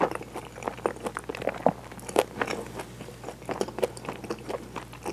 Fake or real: real